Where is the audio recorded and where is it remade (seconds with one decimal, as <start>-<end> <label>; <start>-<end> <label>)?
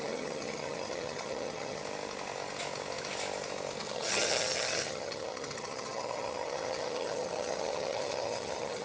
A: 0.0-1.8 remade; 1.8-3.8 recorded; 3.8-8.8 remade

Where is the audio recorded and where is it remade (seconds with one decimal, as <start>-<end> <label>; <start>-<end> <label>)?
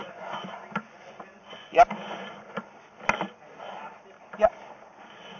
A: 0.0-2.6 remade; 2.6-5.4 recorded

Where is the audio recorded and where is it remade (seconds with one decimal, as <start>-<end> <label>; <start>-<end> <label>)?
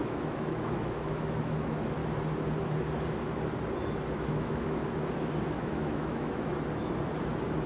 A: 0.0-2.0 remade; 2.0-4.2 recorded; 4.2-4.8 remade; 4.8-5.5 recorded; 5.5-6.5 remade; 6.5-7.7 recorded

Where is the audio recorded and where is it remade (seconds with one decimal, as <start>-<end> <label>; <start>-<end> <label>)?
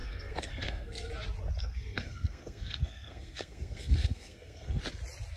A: 0.0-1.1 remade; 1.1-1.6 recorded; 1.6-4.8 remade; 4.8-5.4 recorded